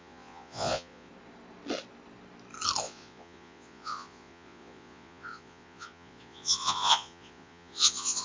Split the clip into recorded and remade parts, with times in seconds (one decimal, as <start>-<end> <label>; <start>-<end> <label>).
0.0-1.1 remade; 1.1-2.8 recorded; 2.8-8.2 remade